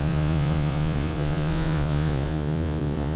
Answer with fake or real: fake